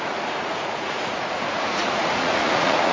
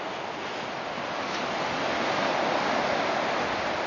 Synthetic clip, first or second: first